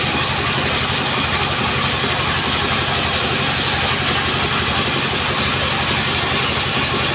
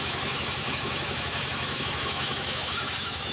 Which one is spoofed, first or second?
second